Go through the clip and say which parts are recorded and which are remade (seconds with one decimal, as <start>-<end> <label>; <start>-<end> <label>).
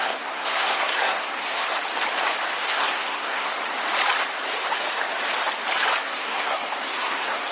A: 0.0-1.6 remade; 1.6-2.6 recorded; 2.6-3.6 remade; 3.6-6.0 recorded; 6.0-7.5 remade